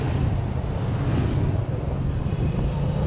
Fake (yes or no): no